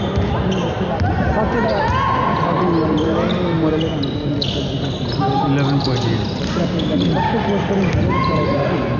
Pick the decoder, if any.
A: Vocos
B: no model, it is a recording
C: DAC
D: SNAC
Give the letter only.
B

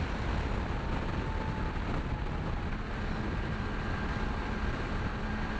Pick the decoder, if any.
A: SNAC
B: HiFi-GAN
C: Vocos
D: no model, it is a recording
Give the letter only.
D